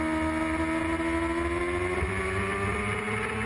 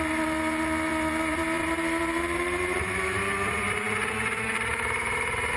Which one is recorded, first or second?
first